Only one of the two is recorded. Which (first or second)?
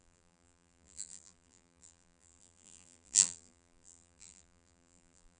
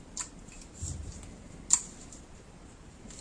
second